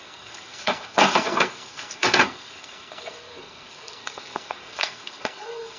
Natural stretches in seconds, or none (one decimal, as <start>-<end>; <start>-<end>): none